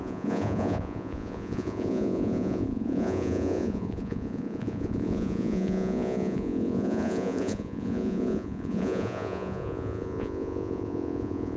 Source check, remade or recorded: remade